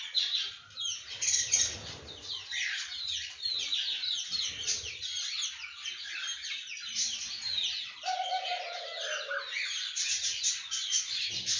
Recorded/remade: recorded